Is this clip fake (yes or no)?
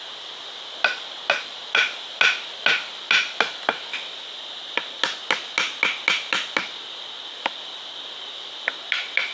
no